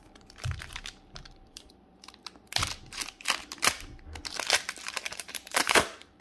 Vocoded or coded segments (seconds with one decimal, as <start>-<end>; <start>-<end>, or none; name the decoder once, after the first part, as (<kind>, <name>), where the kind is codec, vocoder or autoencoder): 0.0-2.2 (vocoder, BigVGAN v2); 4.8-6.2